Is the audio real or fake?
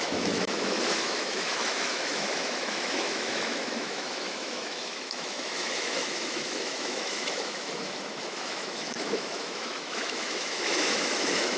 fake